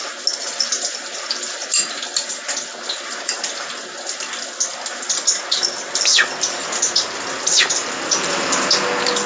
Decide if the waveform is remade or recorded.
recorded